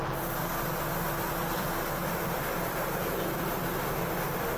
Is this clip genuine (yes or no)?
no